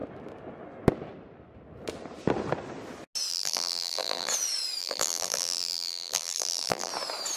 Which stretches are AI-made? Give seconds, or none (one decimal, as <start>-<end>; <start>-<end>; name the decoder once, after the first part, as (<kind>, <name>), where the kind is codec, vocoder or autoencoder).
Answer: 3.3-4.3 (vocoder, BigVGAN v2); 4.8-6.9